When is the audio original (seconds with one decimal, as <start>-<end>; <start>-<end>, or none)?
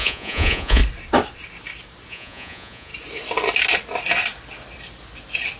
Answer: 0.8-2.1; 2.9-5.6